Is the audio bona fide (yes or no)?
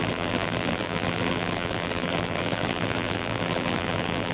no